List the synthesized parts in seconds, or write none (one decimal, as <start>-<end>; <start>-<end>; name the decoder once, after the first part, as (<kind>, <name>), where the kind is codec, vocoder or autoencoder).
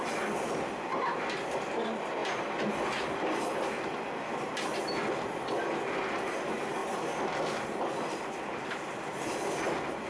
none